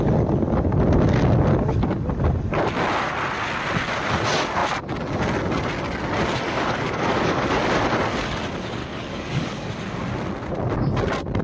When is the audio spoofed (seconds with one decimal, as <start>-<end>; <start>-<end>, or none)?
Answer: 6.4-7.4; 8.8-9.7